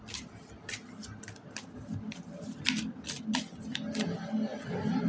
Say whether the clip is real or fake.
real